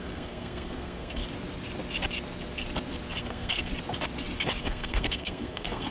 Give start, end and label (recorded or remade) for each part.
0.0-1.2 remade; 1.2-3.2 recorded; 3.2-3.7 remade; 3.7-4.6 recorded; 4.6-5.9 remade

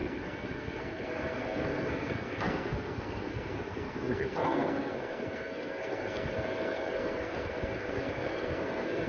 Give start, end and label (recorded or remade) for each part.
0.0-9.1 remade

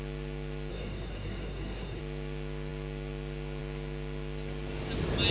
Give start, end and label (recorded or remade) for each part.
0.0-0.7 recorded; 0.7-2.0 remade; 2.0-5.3 recorded

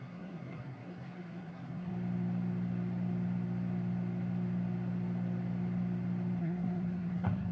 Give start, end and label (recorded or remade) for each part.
0.0-1.9 remade; 1.9-6.4 recorded; 6.4-7.5 remade

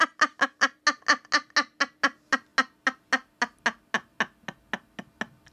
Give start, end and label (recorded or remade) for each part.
0.0-5.5 recorded